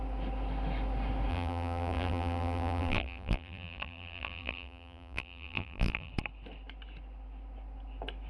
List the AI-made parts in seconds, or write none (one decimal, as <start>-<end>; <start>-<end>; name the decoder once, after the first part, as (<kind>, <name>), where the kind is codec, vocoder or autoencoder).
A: 1.3-6.1 (vocoder, BigVGAN v2)